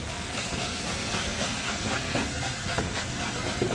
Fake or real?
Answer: fake